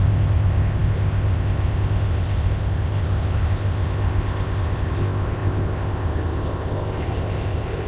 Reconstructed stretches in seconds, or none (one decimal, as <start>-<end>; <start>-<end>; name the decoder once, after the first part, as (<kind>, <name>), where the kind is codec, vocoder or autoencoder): 0.0-7.9 (codec, ZipCodec)